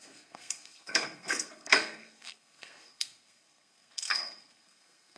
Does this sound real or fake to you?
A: fake